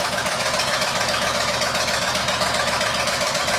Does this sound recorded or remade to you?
remade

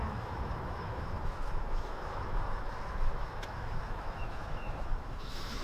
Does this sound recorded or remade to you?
remade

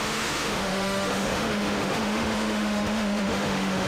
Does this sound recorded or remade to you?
remade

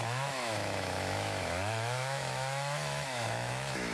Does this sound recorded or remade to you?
remade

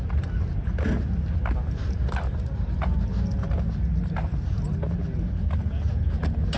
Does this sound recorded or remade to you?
recorded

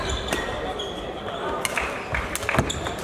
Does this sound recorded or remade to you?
recorded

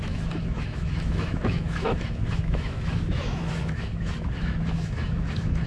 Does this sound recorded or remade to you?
remade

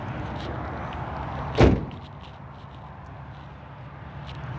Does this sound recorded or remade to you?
recorded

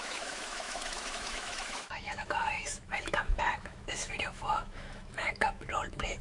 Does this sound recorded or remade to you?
remade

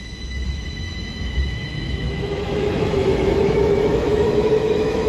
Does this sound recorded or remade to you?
remade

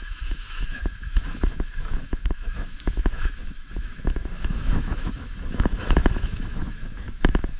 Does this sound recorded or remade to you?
remade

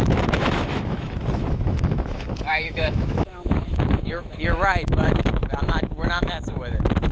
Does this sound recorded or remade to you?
remade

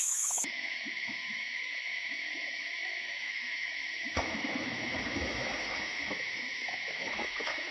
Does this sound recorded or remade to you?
remade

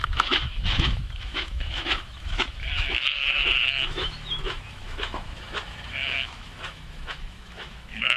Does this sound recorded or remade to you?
remade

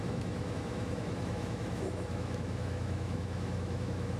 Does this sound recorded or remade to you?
remade